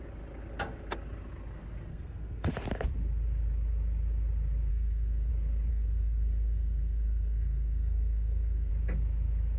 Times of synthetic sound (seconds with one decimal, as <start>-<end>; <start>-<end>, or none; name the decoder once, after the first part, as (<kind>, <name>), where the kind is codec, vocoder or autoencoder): 1.9-2.5 (codec, SNAC); 4.7-5.3; 5.7-8.7